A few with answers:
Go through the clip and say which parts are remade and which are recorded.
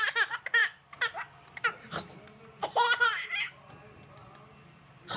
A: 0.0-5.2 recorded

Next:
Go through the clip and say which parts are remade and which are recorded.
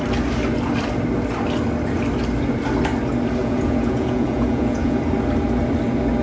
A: 0.0-3.4 recorded; 3.4-5.0 remade; 5.0-6.2 recorded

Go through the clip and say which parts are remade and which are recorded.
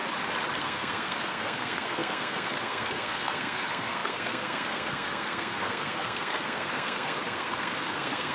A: 0.0-0.6 recorded; 0.6-8.3 remade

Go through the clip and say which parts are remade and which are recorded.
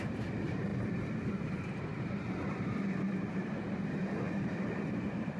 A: 0.0-0.7 remade; 0.7-1.3 recorded; 1.3-5.4 remade